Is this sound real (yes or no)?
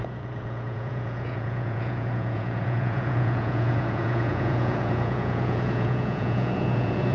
no